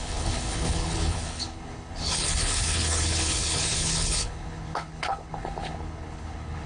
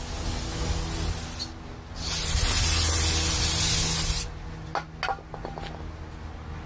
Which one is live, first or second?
second